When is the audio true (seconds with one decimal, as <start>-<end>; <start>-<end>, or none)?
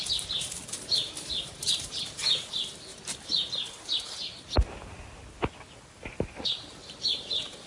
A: 2.2-6.1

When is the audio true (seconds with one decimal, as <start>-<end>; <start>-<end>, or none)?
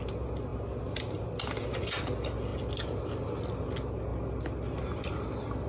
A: 0.0-5.7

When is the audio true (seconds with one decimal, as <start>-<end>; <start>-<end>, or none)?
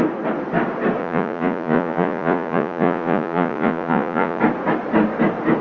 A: 0.0-1.0; 4.4-5.6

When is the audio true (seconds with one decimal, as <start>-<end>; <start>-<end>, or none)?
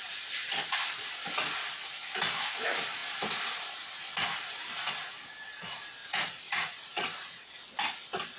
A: 0.0-6.0; 7.5-8.4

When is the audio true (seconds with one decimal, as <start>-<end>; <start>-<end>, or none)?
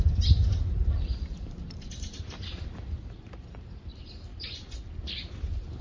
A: 3.9-5.3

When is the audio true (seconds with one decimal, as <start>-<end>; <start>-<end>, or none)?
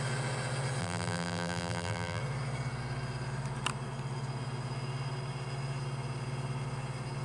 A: 0.0-0.8; 2.2-7.2